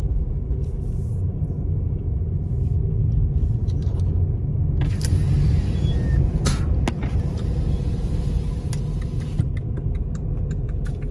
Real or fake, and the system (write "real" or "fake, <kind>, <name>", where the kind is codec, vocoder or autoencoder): real